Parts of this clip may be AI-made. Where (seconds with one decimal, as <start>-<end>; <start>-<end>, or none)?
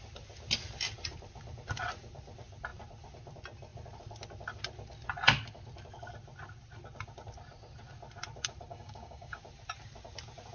8.7-9.4